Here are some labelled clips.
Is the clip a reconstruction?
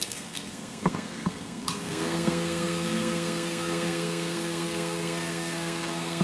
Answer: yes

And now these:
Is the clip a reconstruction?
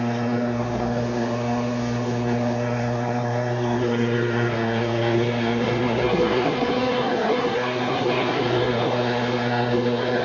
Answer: yes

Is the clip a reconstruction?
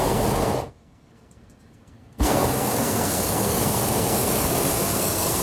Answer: yes